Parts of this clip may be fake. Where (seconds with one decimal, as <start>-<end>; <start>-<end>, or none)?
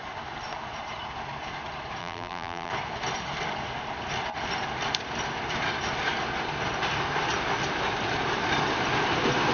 2.0-2.7